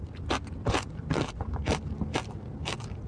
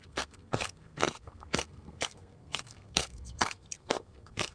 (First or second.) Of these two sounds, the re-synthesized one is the second